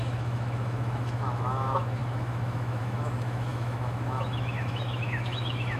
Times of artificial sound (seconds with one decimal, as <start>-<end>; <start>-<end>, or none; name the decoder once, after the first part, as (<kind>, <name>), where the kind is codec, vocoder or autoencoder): 0.0-5.8 (autoencoder, DAC-VAE)